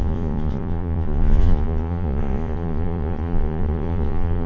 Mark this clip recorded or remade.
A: remade